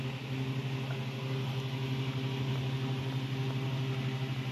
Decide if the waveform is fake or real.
real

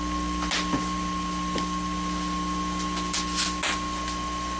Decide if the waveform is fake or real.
real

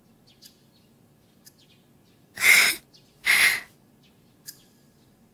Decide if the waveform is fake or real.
real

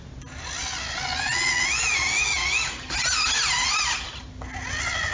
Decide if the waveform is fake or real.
real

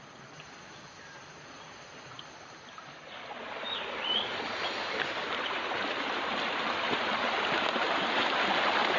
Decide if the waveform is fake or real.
real